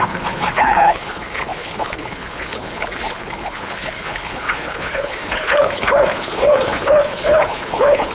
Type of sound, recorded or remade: remade